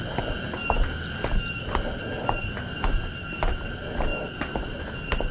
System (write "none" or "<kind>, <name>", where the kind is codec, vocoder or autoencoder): none